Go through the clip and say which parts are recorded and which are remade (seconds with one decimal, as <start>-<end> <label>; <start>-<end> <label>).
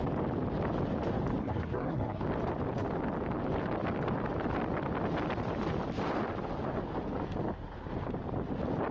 0.0-1.4 recorded; 1.4-2.2 remade; 2.2-8.9 recorded